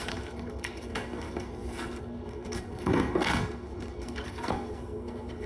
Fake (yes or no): yes